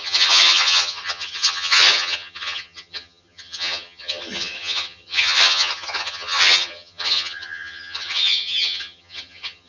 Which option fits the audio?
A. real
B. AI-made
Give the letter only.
B